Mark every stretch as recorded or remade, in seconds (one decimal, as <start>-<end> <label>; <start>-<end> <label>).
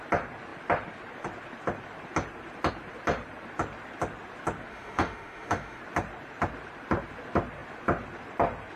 0.0-4.7 recorded; 4.7-5.8 remade; 5.8-8.8 recorded